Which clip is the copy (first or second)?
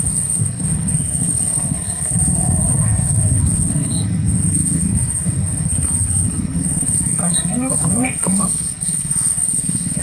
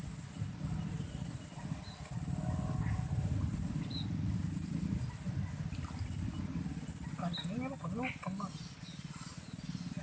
first